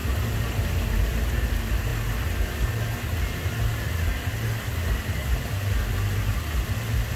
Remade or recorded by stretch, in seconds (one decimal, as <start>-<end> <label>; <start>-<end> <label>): 0.0-1.1 remade; 1.1-7.2 recorded